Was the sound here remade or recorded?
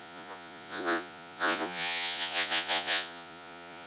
remade